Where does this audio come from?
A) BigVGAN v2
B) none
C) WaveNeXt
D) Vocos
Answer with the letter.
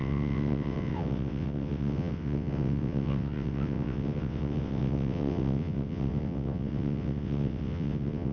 C